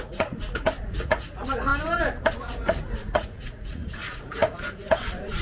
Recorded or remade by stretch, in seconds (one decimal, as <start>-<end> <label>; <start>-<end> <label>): 0.0-1.7 remade; 1.7-2.4 recorded; 2.4-5.4 remade